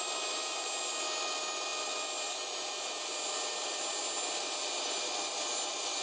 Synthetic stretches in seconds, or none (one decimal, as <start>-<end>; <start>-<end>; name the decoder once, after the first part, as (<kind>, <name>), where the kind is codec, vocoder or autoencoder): none

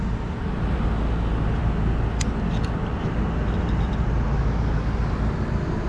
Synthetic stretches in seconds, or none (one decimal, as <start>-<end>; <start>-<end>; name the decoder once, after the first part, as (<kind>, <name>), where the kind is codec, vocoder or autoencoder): none

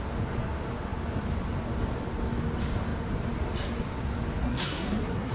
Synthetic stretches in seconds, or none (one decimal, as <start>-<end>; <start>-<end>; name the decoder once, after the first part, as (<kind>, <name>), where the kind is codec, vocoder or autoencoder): 4.4-5.3 (codec, SNAC)

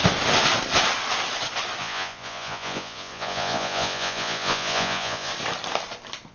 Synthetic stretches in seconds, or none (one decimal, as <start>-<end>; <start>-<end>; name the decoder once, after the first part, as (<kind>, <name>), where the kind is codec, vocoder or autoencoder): 1.8-5.3 (vocoder, Vocos)